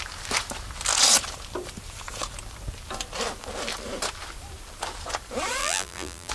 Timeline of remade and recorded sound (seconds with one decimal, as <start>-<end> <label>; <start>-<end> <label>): 0.0-5.6 recorded; 5.6-6.3 remade